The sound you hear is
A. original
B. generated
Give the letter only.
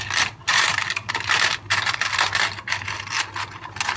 A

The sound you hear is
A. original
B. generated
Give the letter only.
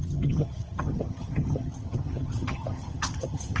B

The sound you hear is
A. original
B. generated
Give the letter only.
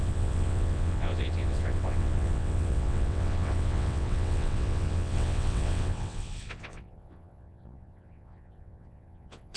B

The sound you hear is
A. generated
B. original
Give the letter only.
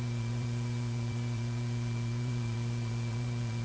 A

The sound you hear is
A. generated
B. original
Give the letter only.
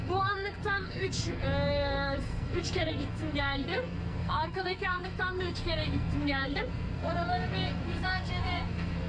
A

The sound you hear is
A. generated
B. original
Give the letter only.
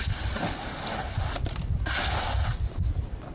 B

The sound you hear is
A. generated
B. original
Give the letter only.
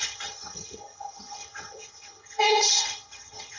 A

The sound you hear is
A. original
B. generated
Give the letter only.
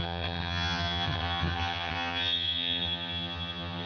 B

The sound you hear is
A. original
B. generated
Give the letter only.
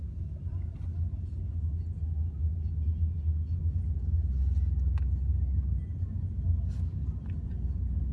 A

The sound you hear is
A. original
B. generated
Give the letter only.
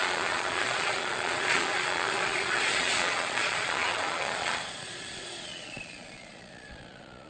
B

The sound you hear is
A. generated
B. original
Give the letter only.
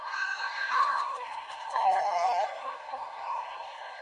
A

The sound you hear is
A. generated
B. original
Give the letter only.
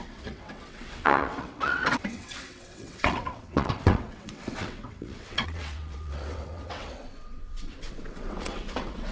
A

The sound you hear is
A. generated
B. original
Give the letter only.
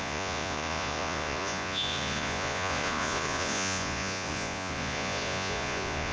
A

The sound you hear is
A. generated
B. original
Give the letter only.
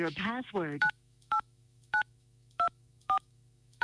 A